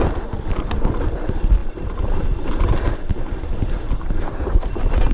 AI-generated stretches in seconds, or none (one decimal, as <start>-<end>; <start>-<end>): none